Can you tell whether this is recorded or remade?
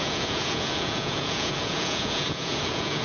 remade